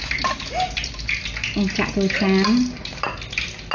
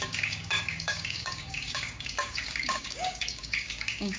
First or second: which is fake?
second